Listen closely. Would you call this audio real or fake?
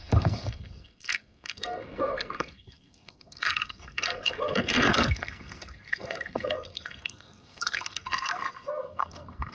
fake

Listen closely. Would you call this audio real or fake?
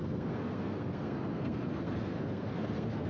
fake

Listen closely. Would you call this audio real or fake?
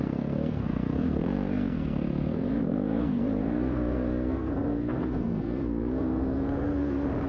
fake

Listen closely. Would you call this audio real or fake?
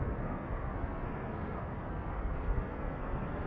fake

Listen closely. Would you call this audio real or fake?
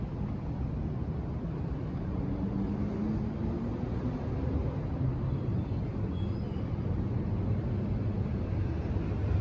real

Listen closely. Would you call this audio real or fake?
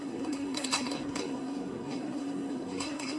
fake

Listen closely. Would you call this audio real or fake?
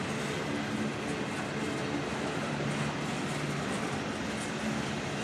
real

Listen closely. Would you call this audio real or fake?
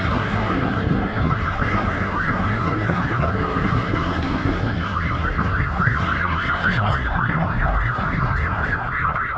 fake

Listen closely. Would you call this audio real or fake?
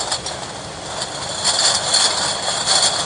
real